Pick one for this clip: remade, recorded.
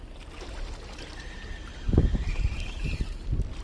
recorded